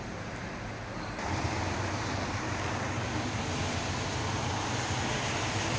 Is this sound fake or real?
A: fake